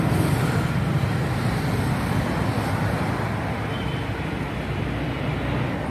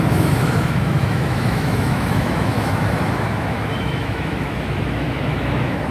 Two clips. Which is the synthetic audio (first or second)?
second